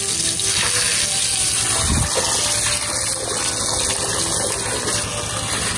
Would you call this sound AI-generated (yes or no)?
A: no